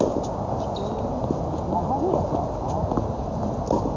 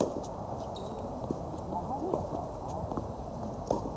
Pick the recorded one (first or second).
first